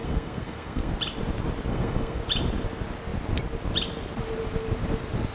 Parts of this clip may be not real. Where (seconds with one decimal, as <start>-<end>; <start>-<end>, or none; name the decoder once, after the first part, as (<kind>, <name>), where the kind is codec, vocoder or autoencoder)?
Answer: 0.0-0.9 (codec, SNAC); 1.7-2.2